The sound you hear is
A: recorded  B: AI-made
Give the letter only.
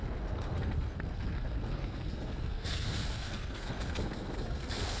B